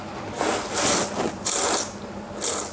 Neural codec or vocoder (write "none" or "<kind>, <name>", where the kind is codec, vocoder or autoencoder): none